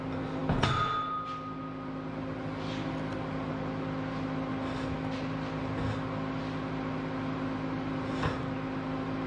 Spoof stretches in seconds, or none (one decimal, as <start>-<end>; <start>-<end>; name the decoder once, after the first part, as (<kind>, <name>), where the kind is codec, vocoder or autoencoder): none